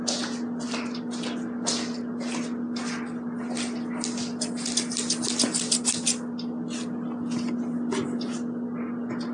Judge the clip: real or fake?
real